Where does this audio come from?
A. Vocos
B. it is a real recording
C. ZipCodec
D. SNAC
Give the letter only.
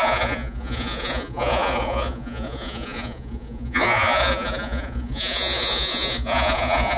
A